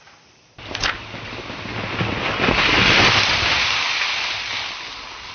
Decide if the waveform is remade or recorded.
recorded